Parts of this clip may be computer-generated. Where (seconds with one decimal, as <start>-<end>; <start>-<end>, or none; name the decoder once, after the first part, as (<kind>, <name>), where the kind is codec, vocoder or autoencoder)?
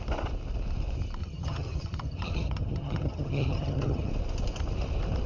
1.2-4.1 (vocoder, HiFi-GAN)